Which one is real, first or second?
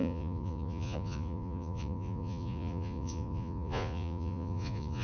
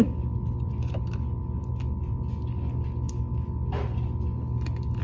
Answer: second